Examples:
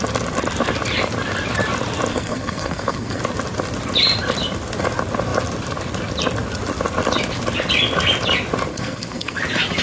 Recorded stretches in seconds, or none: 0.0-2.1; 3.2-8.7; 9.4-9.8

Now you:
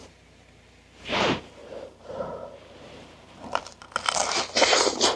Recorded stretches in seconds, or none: 4.2-5.2

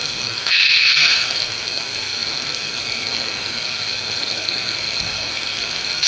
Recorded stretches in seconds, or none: none